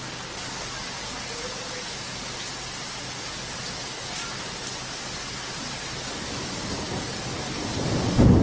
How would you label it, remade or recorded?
recorded